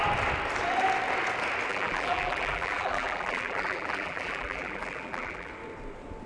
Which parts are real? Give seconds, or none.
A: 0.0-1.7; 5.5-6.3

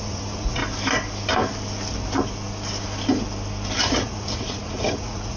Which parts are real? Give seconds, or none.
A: 0.6-3.8

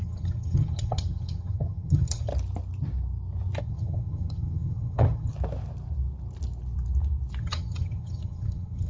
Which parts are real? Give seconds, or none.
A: 2.3-3.6; 5.3-7.4